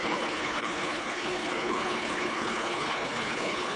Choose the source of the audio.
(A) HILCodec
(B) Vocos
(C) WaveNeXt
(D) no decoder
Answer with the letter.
A